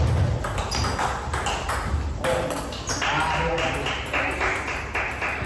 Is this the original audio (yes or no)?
yes